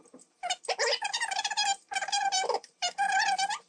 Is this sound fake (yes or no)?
yes